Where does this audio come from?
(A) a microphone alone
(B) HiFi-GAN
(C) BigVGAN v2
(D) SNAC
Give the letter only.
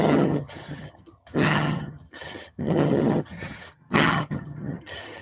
B